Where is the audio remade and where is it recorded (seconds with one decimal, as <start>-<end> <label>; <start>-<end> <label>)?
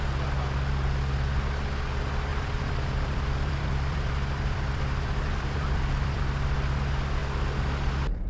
0.0-2.3 recorded; 2.3-6.2 remade; 6.2-8.3 recorded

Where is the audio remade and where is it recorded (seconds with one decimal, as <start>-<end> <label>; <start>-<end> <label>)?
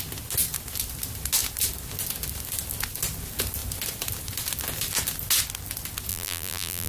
0.0-6.1 recorded; 6.1-6.9 remade